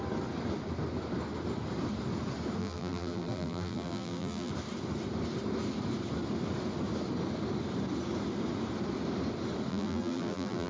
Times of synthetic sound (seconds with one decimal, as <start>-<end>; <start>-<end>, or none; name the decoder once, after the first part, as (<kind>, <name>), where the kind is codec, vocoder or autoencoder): 2.6-4.5 (vocoder, BigVGAN v2); 9.7-10.7